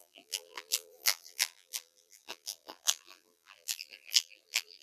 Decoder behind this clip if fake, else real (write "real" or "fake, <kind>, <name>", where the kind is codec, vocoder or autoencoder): fake, vocoder, BigVGAN v2